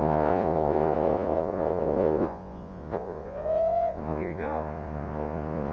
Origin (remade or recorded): remade